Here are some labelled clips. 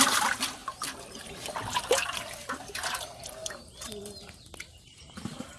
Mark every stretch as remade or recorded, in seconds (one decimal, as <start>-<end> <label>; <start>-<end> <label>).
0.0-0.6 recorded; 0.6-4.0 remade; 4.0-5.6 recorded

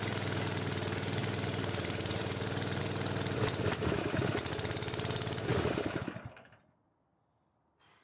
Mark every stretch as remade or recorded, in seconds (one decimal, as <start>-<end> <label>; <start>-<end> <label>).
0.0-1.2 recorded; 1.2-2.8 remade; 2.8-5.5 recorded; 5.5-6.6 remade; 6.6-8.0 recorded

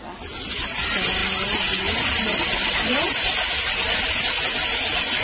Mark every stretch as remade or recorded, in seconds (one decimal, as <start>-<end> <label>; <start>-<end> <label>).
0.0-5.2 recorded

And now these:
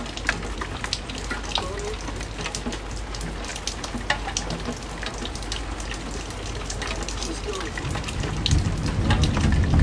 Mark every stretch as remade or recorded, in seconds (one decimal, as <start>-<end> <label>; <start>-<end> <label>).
0.0-9.8 recorded

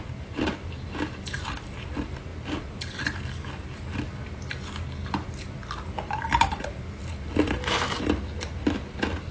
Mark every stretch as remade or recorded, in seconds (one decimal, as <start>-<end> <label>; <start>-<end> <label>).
0.0-9.3 recorded

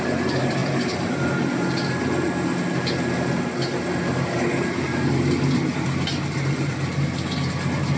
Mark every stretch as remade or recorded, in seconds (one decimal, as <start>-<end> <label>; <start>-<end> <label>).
0.0-8.0 recorded